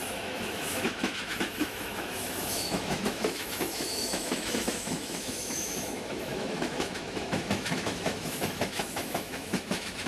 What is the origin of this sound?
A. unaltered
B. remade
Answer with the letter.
B